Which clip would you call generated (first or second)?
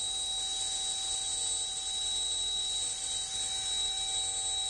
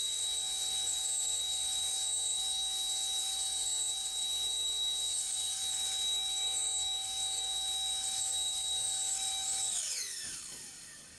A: second